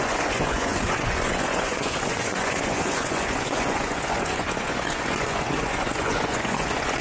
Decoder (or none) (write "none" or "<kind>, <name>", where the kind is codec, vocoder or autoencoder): vocoder, Vocos